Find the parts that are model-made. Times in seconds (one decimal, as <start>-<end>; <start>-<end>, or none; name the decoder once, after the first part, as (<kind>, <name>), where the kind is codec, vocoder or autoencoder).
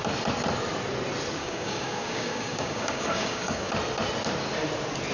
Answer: 1.4-3.7 (codec, DAC)